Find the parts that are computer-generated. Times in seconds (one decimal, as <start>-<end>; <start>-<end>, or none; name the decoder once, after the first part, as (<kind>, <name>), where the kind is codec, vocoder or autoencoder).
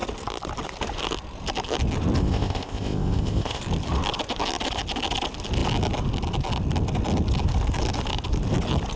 2.2-3.6 (codec, ZipCodec)